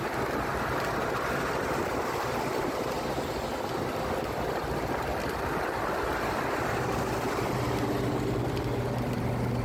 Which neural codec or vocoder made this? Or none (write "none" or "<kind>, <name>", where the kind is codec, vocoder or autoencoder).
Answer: none